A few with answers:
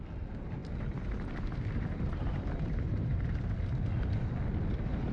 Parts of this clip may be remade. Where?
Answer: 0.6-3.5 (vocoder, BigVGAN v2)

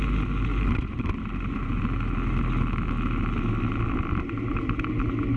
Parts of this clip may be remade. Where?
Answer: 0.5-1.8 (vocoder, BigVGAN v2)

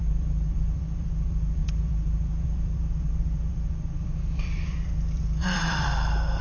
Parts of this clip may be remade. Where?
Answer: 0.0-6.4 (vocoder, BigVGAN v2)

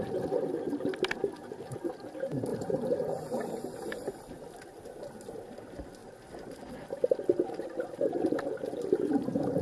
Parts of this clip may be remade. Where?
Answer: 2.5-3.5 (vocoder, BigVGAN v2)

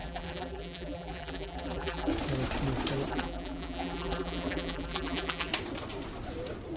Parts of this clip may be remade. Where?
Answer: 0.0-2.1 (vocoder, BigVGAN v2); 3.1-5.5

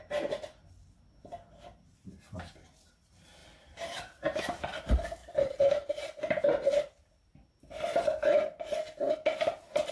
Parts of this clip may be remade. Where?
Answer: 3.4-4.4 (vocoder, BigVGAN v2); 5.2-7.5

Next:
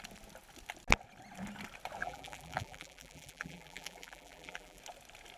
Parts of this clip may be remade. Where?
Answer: 2.0-4.8 (vocoder, BigVGAN v2)